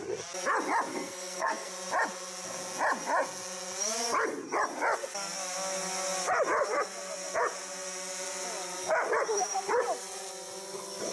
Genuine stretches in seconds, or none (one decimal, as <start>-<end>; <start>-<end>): 0.0-0.9; 1.7-11.1